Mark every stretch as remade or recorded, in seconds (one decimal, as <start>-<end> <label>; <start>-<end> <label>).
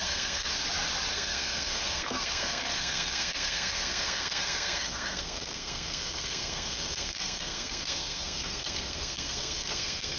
0.0-0.5 remade; 0.5-1.1 recorded; 1.1-10.2 remade